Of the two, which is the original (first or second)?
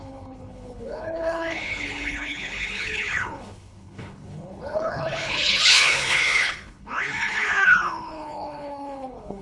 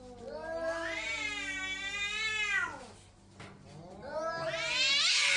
second